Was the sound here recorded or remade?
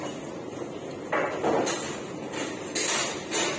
recorded